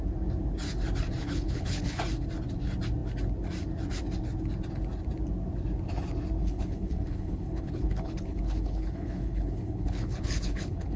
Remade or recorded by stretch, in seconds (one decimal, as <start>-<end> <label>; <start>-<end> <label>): 0.0-1.2 recorded; 1.2-2.0 remade; 2.0-6.4 recorded; 6.4-11.0 remade